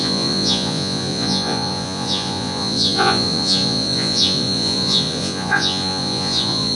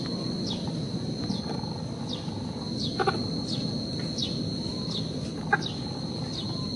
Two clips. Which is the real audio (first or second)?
second